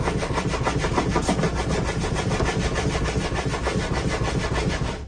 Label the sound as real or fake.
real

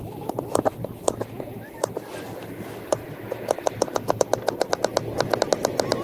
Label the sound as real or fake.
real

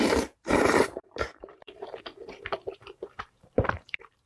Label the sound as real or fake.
fake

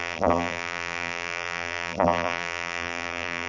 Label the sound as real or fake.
fake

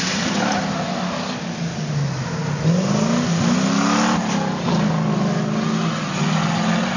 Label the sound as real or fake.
real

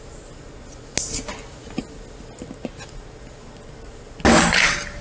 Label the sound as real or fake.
real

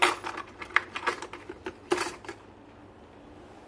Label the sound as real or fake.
fake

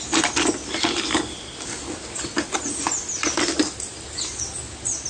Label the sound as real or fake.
real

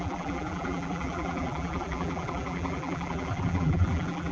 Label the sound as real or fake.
fake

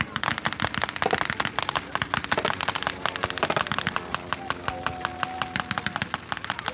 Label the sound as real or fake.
real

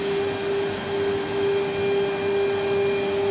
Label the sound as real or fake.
real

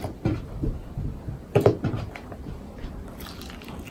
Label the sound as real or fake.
fake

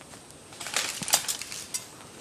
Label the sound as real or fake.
real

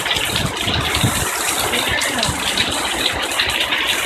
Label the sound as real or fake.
real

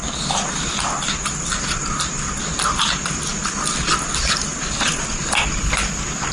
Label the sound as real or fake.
real